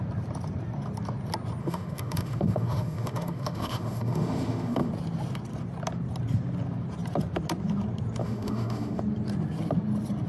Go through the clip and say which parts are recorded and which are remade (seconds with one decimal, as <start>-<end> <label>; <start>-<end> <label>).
0.0-1.6 recorded; 1.6-4.9 remade; 4.9-8.2 recorded; 8.2-9.0 remade; 9.0-10.3 recorded